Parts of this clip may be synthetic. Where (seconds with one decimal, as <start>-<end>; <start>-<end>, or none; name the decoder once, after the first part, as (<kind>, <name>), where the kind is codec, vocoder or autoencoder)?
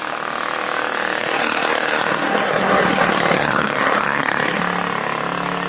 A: 1.2-4.6 (codec, SNAC)